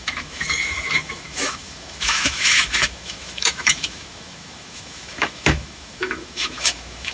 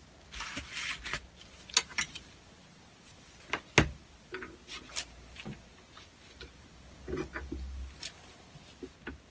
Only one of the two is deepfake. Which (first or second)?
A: first